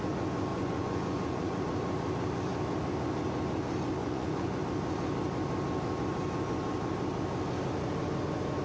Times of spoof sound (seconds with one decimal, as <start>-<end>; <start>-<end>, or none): 0.5-1.6; 4.0-4.6